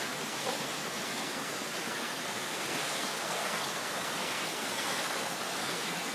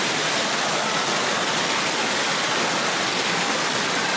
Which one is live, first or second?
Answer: second